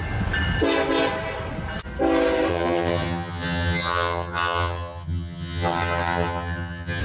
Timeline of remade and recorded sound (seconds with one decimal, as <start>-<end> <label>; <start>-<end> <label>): 0.0-2.5 recorded; 2.5-7.0 remade